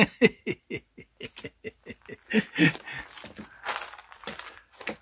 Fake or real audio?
real